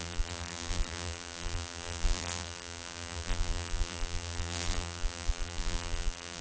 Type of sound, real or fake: fake